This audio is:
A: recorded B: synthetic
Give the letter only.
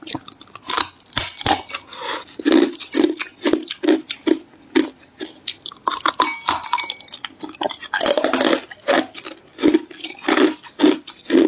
A